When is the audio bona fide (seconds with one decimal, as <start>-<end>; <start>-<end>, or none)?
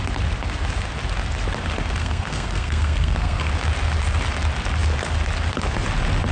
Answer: 0.0-2.0; 3.5-6.3